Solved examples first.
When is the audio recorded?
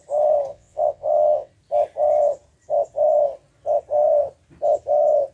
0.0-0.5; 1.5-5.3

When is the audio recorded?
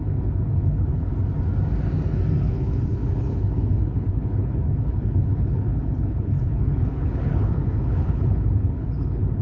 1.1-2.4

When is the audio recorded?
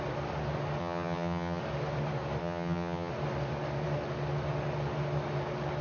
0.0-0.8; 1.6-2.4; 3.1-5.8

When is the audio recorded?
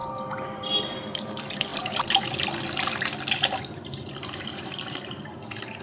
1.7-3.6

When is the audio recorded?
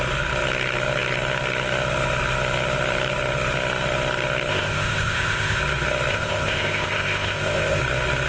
0.0-4.5; 5.6-6.1; 7.8-8.3